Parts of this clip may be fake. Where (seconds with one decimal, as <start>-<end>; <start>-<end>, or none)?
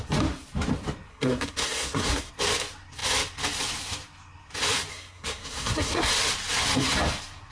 1.1-2.3; 4.9-6.1